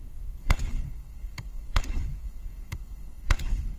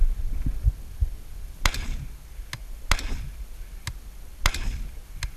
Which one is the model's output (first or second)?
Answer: first